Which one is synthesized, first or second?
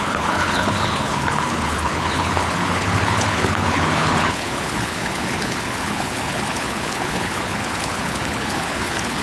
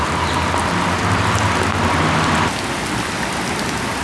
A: first